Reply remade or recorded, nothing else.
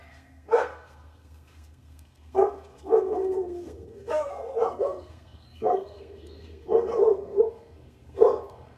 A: remade